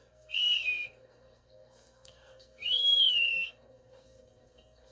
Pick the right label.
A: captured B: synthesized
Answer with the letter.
B